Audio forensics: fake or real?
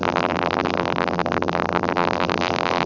fake